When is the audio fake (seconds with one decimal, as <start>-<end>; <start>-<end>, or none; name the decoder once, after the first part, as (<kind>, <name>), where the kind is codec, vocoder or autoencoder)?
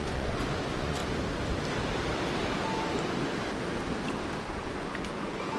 0.0-1.0 (vocoder, Vocos); 4.4-5.6